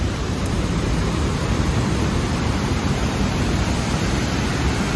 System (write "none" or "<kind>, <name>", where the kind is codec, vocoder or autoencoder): vocoder, BigVGAN v2